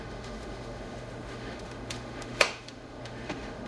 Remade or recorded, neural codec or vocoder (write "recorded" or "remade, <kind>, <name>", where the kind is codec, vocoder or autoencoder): remade, autoencoder, DAC-VAE